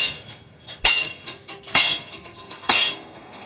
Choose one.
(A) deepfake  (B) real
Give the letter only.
A